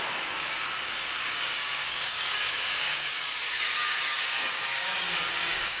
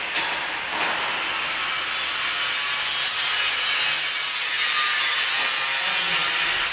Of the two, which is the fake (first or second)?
first